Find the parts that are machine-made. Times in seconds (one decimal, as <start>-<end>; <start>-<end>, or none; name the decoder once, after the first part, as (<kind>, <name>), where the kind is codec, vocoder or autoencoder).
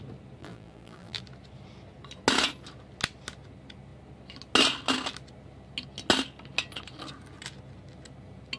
0.4-1.2 (vocoder, BigVGAN v2)